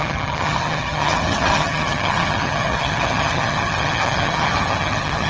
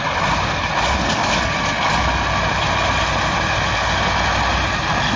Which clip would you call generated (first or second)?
first